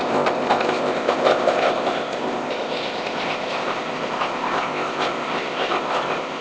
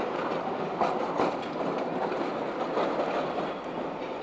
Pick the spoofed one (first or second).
first